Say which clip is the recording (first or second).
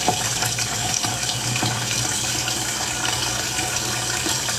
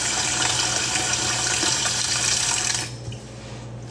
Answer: second